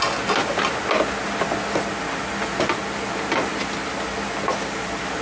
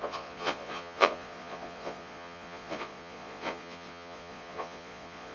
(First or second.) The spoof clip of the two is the second